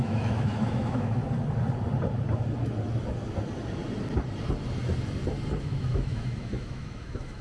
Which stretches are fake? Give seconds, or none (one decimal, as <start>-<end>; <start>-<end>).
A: 0.0-1.2; 5.6-7.4